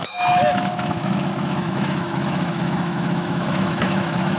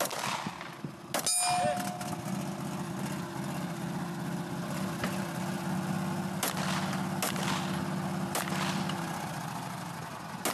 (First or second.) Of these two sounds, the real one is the second